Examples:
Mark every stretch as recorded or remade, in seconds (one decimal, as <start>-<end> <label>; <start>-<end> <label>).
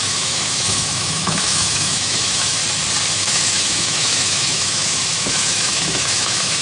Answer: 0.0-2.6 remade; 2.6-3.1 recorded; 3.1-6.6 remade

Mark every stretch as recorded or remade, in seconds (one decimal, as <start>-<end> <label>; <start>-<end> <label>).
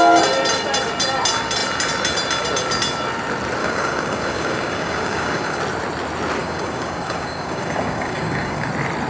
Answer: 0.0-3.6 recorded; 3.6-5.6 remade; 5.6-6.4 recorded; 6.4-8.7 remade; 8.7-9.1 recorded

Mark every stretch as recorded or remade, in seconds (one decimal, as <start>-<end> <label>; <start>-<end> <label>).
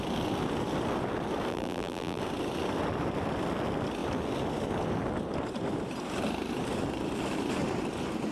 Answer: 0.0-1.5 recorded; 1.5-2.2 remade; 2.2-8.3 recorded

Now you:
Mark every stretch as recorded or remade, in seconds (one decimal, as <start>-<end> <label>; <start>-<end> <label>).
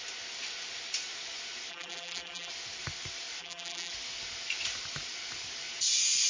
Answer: 0.0-1.7 recorded; 1.7-2.5 remade; 2.5-3.4 recorded; 3.4-3.9 remade; 3.9-6.3 recorded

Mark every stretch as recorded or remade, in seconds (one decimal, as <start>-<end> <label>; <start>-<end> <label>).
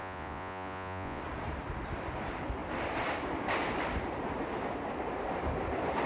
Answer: 0.0-1.2 remade; 1.2-6.1 recorded